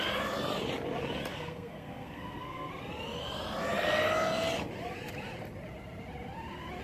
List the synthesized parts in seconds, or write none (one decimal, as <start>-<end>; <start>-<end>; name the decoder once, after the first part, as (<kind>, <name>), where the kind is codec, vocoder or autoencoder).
1.3-2.7 (codec, SNAC)